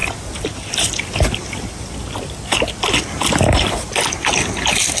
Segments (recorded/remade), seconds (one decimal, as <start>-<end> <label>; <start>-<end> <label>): 0.0-5.0 recorded